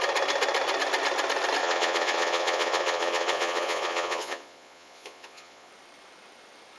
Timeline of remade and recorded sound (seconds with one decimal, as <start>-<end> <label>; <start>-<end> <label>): 0.0-1.6 recorded; 1.6-5.7 remade; 5.7-6.8 recorded